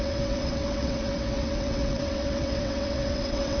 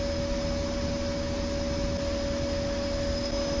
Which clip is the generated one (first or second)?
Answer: first